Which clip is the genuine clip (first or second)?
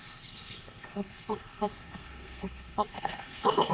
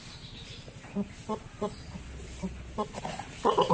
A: second